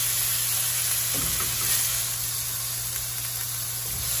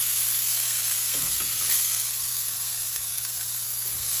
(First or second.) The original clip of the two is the first